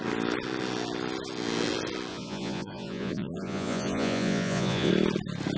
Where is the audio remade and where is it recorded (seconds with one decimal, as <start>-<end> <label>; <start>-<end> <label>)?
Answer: 0.0-2.1 recorded; 2.1-4.9 remade; 4.9-5.6 recorded